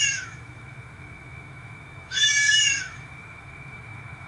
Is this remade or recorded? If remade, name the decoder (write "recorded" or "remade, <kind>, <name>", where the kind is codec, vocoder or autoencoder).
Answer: remade, autoencoder, DAC-VAE